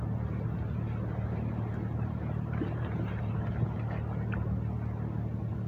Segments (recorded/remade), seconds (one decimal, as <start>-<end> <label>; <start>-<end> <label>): 0.0-1.9 recorded; 1.9-3.5 remade; 3.5-5.7 recorded